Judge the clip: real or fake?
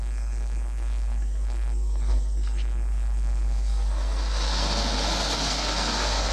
fake